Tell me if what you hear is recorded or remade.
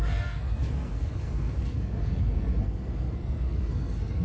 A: remade